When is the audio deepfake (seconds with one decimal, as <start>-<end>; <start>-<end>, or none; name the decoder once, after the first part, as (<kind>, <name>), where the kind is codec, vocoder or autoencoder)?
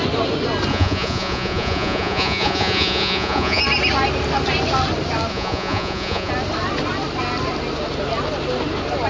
0.7-3.6 (vocoder, Vocos); 5.3-6.3